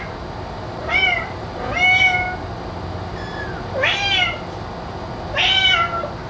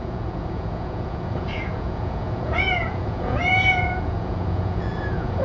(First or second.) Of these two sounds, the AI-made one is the second